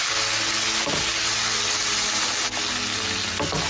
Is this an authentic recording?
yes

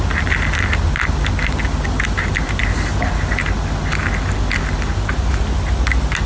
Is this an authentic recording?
yes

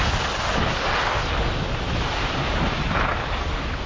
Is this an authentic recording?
yes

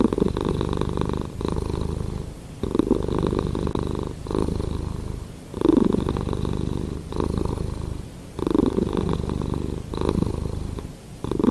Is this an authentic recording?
yes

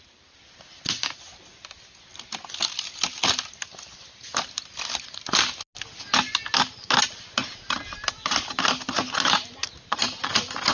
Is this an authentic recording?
yes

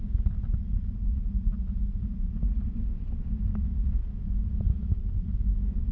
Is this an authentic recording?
yes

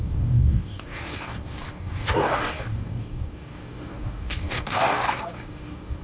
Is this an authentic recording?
no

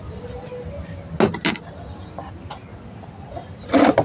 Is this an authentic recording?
yes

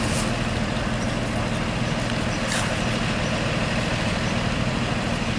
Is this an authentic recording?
yes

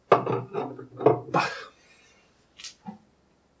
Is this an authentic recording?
yes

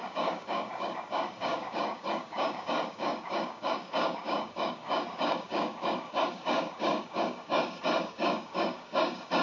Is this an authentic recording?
no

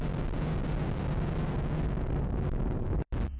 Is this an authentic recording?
yes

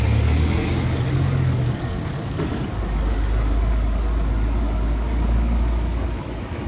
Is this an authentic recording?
no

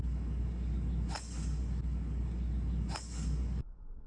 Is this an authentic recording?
no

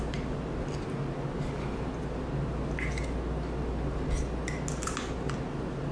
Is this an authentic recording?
yes